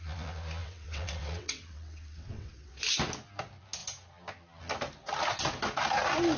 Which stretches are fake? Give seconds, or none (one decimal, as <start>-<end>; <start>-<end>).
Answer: 0.6-2.7